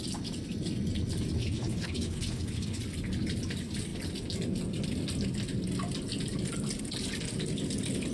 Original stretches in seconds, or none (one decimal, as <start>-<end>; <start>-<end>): 0.0-1.4; 2.8-8.1